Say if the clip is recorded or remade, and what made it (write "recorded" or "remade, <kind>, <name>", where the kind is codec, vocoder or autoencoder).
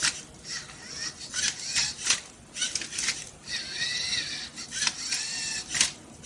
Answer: recorded